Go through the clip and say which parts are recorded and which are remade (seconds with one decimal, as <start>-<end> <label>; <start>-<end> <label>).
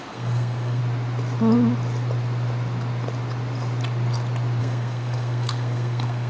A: 0.0-0.8 remade; 0.8-4.6 recorded; 4.6-6.3 remade